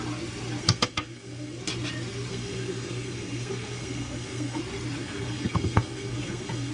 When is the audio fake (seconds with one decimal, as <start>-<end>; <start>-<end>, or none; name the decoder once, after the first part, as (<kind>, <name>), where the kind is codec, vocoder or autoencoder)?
0.6-1.6 (codec, SNAC); 2.3-4.6; 5.0-6.7